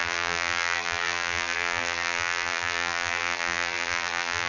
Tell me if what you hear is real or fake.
fake